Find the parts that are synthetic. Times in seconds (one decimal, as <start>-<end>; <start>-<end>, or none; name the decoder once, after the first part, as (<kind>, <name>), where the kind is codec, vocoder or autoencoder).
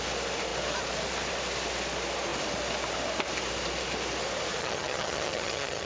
4.6-5.9 (vocoder, HiFi-GAN)